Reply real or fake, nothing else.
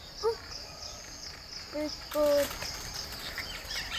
real